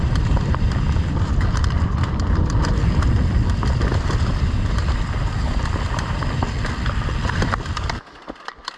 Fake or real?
fake